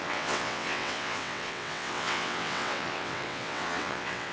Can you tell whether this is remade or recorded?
remade